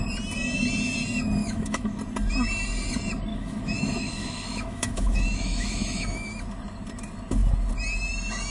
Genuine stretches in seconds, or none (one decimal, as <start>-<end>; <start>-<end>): 0.0-1.4; 2.0-3.3; 6.3-8.5